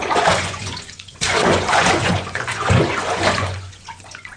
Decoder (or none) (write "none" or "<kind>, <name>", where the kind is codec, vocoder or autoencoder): vocoder, Vocos